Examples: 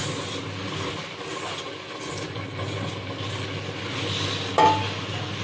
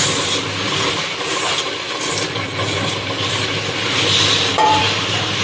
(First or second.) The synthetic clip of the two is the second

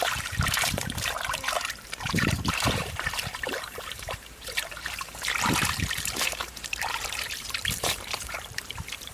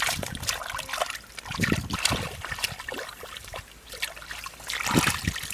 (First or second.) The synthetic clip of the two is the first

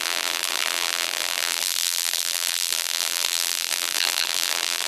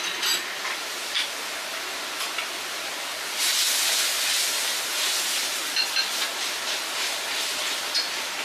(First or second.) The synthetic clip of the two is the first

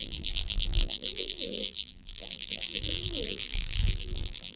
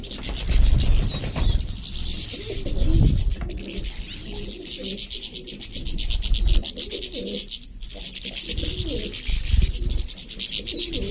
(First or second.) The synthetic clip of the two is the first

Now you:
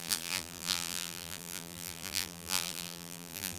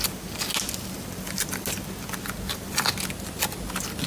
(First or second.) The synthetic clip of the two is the first